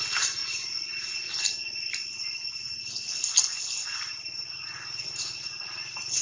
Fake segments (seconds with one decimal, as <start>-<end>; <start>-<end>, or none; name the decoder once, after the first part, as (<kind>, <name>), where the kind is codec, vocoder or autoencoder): 0.0-0.4 (vocoder, BigVGAN v2); 4.1-6.2